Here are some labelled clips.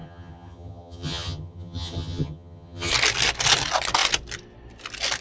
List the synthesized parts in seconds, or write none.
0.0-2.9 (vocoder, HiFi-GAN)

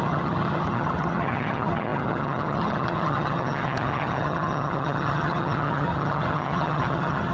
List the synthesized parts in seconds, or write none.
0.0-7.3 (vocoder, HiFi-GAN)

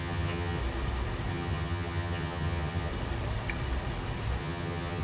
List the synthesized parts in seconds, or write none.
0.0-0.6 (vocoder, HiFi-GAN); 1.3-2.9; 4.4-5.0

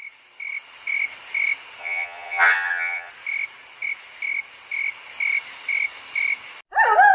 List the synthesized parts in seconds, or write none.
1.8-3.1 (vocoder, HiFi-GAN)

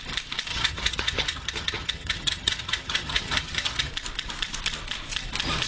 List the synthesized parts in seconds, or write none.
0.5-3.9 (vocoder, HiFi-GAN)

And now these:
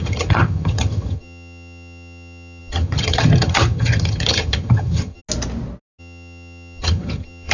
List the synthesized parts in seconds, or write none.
0.0-5.2 (vocoder, HiFi-GAN); 6.0-7.5